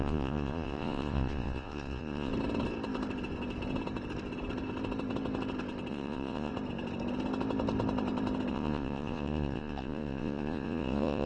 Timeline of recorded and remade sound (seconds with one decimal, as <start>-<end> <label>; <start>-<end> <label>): 0.0-2.3 remade; 2.3-5.9 recorded; 5.9-6.5 remade; 6.5-8.5 recorded; 8.5-11.3 remade